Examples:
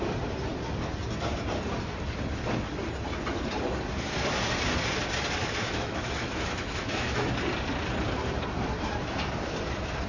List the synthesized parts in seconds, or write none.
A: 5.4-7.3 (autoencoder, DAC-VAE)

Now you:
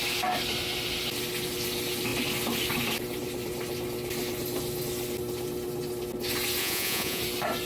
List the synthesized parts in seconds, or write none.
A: 6.6-7.2 (vocoder, Vocos)